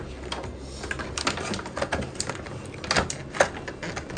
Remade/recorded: recorded